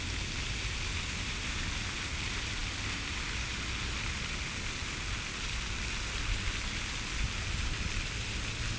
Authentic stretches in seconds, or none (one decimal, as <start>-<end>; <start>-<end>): 0.0-8.8